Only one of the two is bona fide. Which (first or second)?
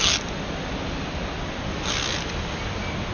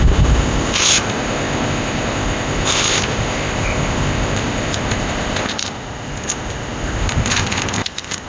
first